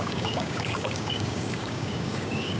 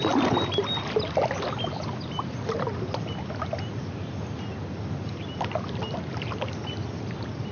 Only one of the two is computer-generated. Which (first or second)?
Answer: first